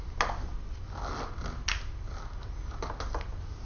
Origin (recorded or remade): recorded